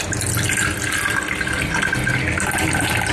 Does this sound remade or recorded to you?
recorded